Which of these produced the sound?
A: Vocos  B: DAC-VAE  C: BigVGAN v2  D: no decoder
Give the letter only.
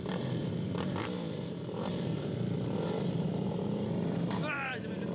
C